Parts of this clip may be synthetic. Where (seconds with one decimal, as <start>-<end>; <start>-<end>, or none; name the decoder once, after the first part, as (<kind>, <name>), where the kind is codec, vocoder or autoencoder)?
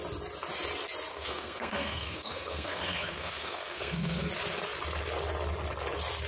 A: 1.1-4.3 (codec, SNAC)